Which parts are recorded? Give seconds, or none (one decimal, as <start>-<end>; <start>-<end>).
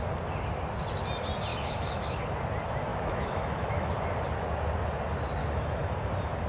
0.0-1.5; 2.2-2.9; 3.9-5.4; 6.1-6.5